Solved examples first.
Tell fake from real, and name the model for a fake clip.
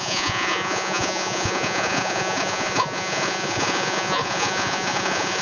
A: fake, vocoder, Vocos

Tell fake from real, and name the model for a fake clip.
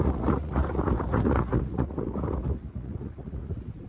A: fake, vocoder, Vocos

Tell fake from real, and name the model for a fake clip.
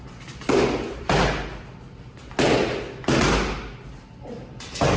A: real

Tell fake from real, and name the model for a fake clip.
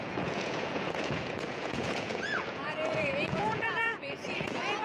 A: fake, vocoder, Vocos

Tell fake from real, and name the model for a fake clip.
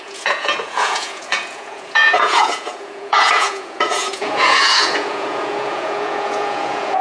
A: fake, vocoder, Vocos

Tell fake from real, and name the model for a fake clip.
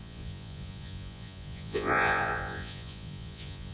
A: fake, vocoder, Vocos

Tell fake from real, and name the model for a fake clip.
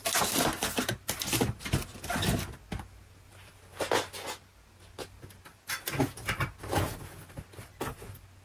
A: real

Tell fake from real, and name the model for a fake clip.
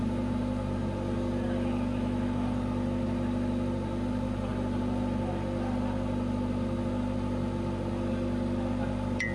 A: real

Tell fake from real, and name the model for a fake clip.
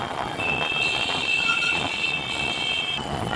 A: fake, vocoder, Vocos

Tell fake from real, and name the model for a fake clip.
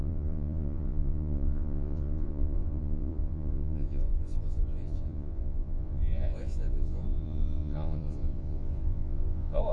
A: fake, vocoder, Vocos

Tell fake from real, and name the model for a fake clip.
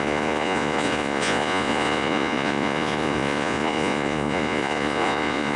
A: fake, vocoder, Vocos